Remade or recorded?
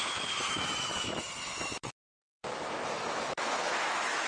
remade